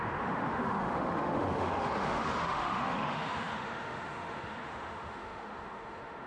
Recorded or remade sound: remade